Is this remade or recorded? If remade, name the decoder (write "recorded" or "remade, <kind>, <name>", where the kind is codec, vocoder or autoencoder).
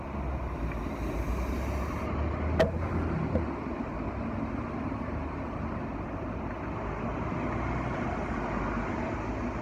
recorded